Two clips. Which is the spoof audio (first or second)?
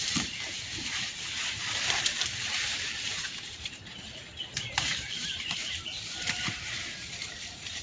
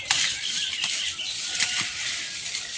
first